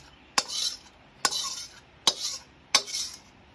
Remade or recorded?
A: recorded